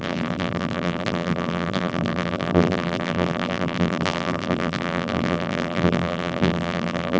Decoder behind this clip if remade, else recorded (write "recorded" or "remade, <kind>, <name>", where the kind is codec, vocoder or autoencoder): remade, vocoder, BigVGAN v2